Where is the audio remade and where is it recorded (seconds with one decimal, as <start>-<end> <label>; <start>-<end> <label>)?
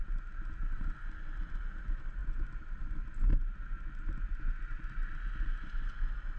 0.0-6.4 recorded